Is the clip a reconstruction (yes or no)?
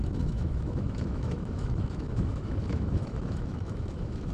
yes